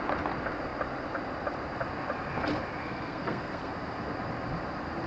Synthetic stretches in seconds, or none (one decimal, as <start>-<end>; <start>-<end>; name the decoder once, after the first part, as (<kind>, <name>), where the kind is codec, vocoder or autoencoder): 2.8-3.7 (codec, SNAC)